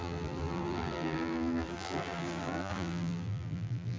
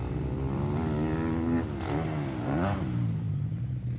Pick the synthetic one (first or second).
first